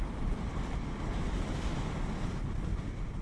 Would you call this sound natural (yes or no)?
yes